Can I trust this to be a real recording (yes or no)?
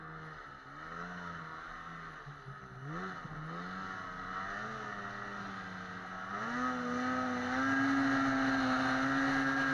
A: yes